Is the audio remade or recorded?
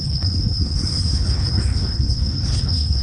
remade